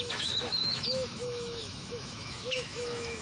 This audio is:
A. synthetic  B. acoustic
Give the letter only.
A